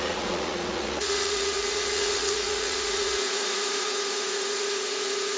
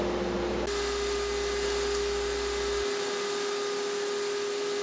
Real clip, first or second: second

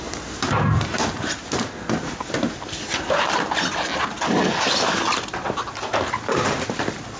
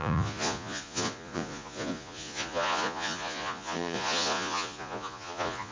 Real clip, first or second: first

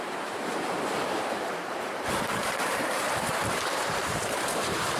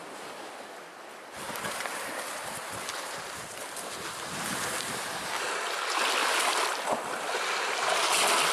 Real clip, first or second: second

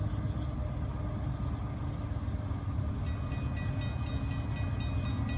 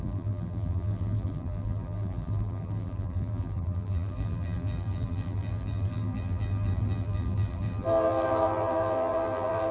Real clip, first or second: first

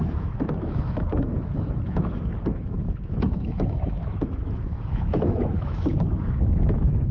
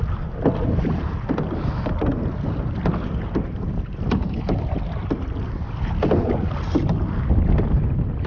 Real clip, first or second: second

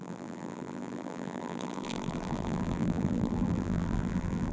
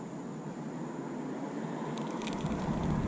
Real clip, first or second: second